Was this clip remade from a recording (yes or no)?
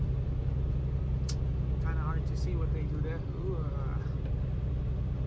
no